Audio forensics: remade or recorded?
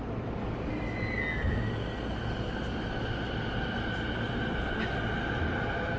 recorded